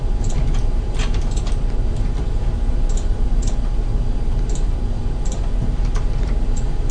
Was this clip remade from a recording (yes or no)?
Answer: yes